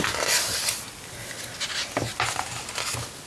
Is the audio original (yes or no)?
yes